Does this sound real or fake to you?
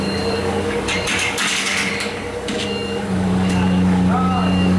fake